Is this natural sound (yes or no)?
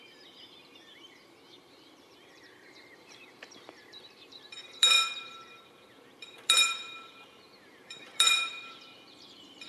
no